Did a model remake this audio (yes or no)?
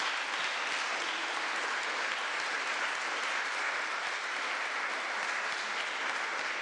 no